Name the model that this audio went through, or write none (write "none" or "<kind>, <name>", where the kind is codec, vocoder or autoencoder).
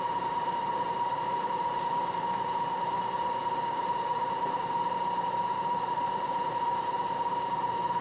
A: vocoder, BigVGAN v2